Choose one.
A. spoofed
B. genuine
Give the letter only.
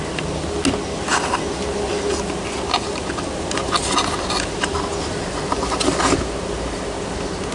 B